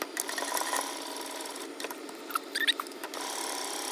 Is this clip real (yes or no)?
yes